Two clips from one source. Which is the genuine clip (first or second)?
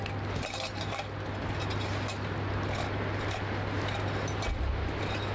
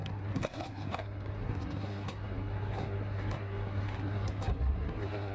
first